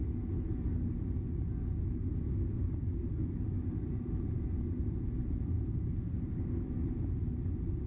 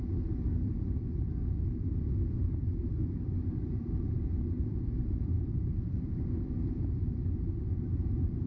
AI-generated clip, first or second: second